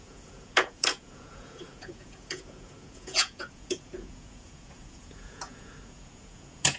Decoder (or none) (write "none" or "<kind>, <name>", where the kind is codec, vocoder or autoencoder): vocoder, Vocos